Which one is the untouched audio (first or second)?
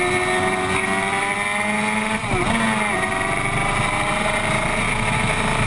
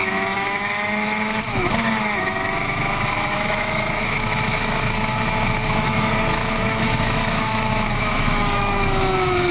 first